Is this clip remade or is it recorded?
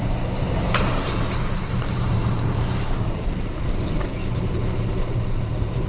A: remade